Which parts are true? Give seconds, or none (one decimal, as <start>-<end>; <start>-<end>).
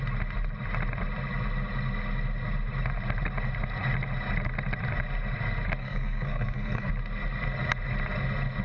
0.0-5.8; 6.9-8.6